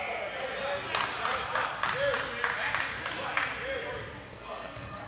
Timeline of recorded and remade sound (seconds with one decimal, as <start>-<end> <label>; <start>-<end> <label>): 0.0-4.3 recorded; 4.3-5.1 remade